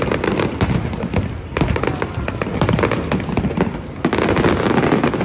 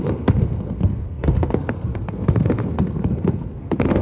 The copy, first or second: second